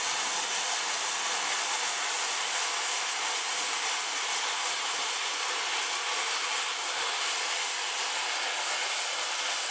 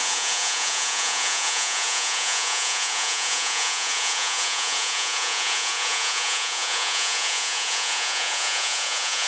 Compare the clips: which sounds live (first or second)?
first